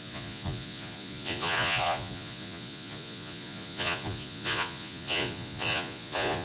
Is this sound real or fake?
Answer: fake